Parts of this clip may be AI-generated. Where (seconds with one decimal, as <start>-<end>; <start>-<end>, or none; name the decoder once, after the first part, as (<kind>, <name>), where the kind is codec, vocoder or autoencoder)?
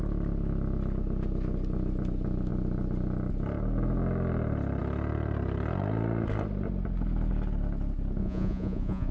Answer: 8.2-9.1 (vocoder, Vocos)